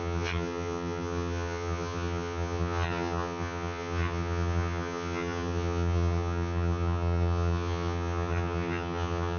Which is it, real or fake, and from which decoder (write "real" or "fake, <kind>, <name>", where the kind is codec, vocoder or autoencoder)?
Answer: fake, vocoder, HiFi-GAN